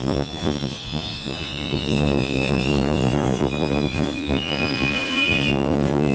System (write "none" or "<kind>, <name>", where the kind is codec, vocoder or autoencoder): vocoder, Vocos